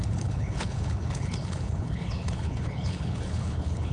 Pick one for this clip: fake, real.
fake